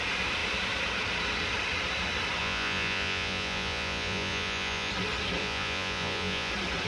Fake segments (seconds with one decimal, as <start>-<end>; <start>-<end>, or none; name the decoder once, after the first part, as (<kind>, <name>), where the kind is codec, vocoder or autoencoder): 2.4-4.9 (vocoder, Vocos); 5.4-6.5